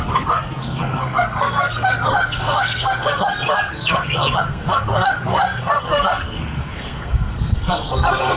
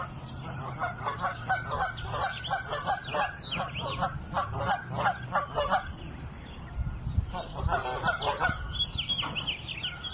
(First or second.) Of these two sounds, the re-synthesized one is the first